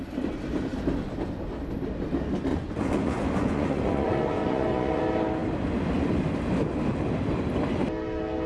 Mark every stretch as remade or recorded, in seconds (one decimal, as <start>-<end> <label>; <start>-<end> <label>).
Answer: 0.0-2.5 recorded; 2.5-5.0 remade; 5.0-8.5 recorded